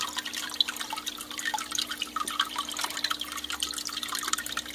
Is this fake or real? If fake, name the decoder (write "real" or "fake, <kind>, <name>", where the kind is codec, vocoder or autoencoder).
real